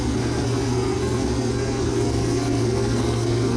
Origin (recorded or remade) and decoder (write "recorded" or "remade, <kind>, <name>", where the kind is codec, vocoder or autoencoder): remade, codec, SNAC